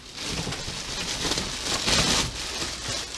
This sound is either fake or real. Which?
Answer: real